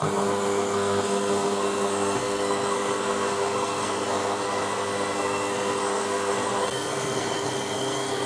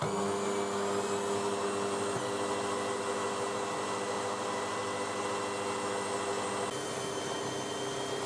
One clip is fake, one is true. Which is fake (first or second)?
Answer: first